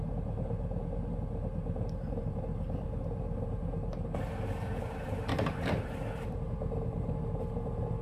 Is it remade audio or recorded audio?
remade